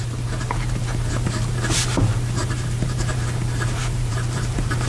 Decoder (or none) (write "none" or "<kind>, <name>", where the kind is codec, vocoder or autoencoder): vocoder, BigVGAN v2